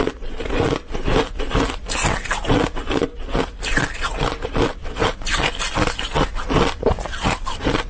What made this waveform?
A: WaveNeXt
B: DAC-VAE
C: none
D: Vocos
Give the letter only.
C